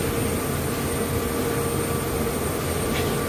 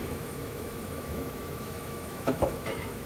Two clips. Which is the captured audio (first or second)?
first